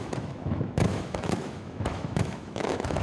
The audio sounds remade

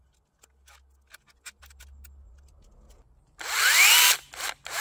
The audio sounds recorded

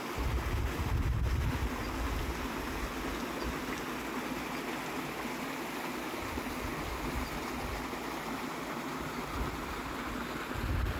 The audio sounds recorded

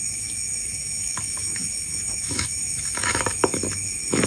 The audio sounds remade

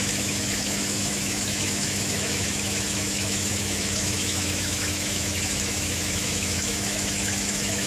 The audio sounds remade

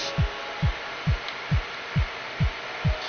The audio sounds recorded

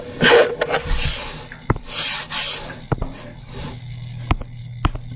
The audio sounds recorded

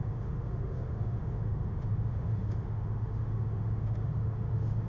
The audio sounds remade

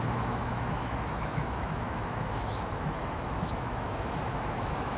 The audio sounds remade